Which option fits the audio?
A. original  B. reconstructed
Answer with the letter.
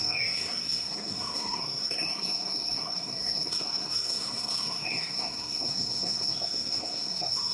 B